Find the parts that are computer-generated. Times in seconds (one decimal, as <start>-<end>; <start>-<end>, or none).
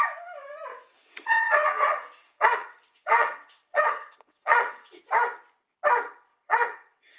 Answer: 0.7-5.0; 6.3-7.2